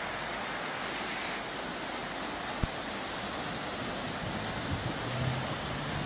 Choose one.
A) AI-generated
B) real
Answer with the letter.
B